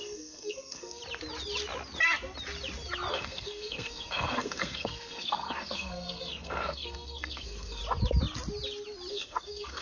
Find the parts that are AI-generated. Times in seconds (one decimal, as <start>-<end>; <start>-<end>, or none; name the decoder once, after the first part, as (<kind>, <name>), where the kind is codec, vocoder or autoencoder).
0.0-1.0 (codec, SNAC); 3.1-7.8; 9.1-9.8